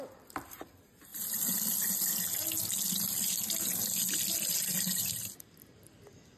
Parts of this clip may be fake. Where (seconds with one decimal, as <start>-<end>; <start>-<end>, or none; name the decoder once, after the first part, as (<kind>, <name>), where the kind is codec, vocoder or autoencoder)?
none